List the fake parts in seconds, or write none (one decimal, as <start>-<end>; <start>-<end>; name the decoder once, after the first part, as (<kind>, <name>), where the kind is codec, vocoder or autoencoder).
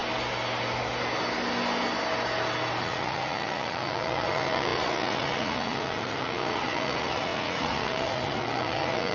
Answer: 2.8-9.1 (vocoder, Vocos)